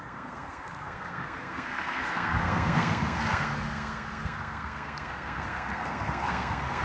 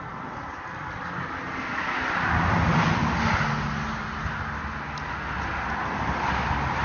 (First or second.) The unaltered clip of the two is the second